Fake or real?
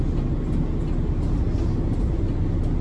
real